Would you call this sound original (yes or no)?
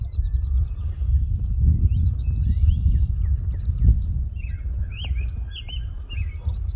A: yes